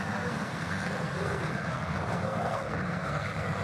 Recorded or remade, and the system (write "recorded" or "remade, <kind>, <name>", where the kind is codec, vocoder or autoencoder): remade, codec, SNAC